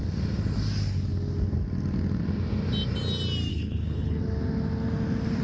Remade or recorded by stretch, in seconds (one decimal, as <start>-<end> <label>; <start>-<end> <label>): 0.0-3.5 recorded; 3.5-4.2 remade; 4.2-5.4 recorded